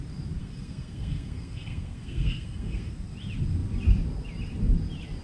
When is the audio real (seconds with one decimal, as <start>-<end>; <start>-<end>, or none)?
0.0-0.4; 2.9-5.2